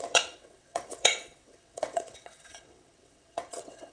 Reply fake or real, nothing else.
fake